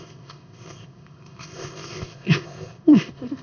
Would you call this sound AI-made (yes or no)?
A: yes